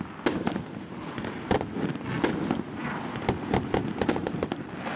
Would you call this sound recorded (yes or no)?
yes